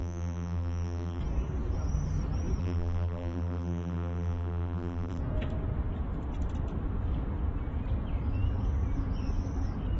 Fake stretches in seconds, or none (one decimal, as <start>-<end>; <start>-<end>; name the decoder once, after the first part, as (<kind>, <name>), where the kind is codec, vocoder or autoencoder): 0.0-1.2 (vocoder, BigVGAN v2); 2.6-5.2